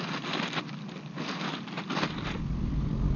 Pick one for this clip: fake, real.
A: real